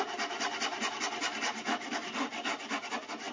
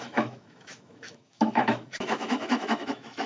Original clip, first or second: first